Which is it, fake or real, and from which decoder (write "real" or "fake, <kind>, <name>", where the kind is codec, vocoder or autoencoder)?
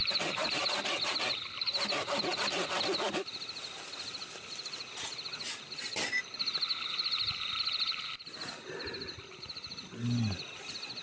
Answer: real